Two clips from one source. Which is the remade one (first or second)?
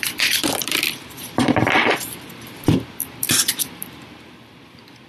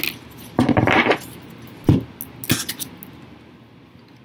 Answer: first